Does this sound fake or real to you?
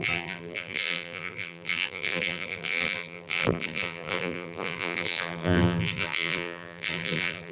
fake